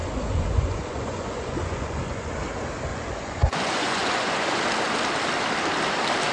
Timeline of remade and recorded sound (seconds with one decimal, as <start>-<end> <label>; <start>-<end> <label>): 0.0-2.3 remade; 2.3-2.9 recorded; 2.9-4.6 remade; 4.6-6.3 recorded